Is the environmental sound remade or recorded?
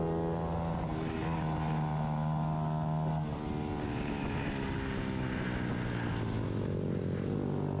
recorded